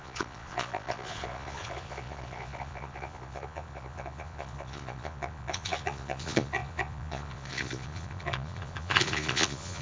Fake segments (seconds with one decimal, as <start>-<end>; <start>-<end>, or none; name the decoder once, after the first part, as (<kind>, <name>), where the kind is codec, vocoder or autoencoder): 0.0-9.8 (vocoder, Vocos)